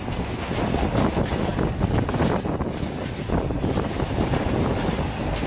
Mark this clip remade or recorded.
recorded